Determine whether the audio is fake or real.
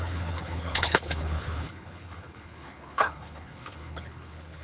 fake